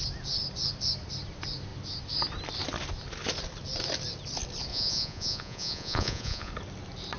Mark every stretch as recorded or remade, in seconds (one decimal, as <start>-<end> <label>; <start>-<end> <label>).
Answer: 0.0-4.7 recorded; 4.7-6.5 remade; 6.5-7.2 recorded